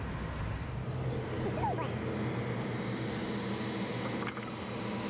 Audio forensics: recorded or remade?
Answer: recorded